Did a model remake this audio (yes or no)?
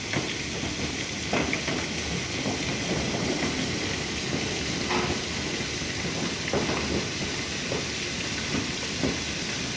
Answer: no